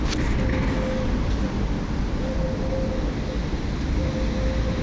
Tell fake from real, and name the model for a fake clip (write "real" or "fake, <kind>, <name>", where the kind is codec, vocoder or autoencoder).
real